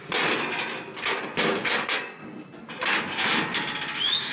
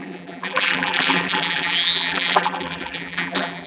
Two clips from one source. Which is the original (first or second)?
first